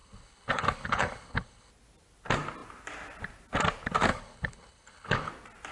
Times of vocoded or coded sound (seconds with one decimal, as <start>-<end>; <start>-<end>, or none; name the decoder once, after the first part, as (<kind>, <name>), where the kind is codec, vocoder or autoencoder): 0.0-1.7 (codec, HILCodec); 4.1-5.3